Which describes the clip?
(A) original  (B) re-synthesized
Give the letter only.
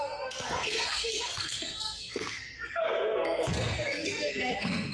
B